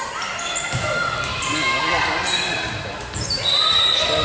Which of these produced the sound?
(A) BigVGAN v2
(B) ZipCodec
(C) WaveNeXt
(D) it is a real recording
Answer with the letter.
A